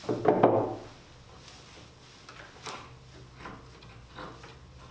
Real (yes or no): yes